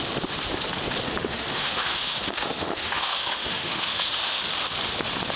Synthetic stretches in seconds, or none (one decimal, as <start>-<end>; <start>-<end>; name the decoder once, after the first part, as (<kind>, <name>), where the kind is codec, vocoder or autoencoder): 1.2-4.4 (autoencoder, DAC-VAE)